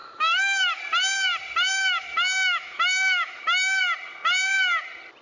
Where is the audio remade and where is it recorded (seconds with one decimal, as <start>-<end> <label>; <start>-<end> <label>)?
0.0-0.8 remade; 0.8-1.7 recorded; 1.7-3.8 remade; 3.8-5.2 recorded